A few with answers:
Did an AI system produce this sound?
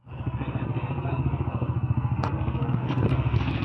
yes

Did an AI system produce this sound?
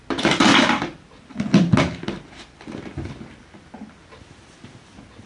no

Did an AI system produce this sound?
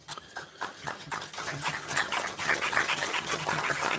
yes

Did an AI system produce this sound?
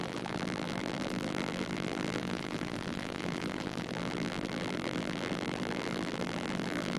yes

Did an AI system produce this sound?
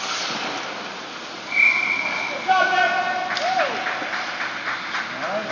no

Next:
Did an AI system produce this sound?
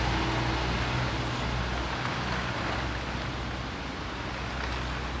no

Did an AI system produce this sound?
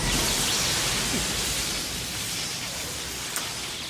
no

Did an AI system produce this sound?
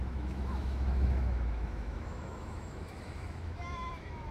yes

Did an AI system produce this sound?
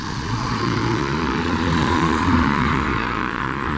yes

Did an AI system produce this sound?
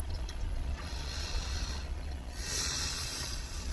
yes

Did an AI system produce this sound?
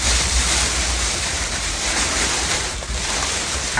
yes